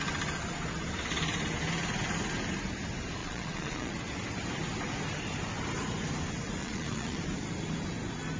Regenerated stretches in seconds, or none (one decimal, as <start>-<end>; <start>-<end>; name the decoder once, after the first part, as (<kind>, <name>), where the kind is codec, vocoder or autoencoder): 3.2-3.9 (vocoder, Vocos); 6.6-7.2